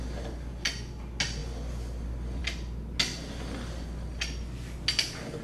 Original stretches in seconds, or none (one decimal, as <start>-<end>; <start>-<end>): 0.0-5.4

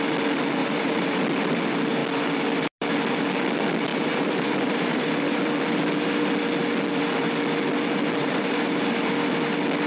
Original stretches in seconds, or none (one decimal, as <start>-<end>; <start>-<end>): 0.0-0.6; 1.2-3.9; 5.5-8.2; 9.1-9.9